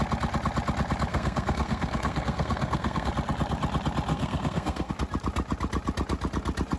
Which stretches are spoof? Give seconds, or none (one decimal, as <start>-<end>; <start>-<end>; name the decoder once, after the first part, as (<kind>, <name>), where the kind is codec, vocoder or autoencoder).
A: 1.1-3.1 (codec, SNAC); 4.1-4.9